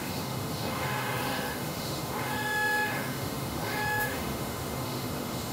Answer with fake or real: fake